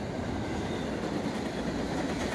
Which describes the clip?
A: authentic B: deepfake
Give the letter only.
A